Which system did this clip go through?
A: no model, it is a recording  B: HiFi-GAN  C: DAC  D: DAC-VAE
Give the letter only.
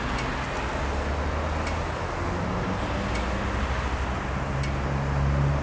A